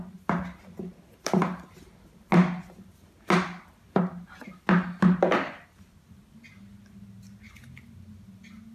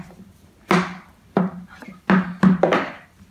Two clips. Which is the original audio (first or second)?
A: first